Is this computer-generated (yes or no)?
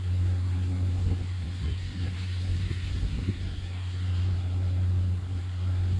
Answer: yes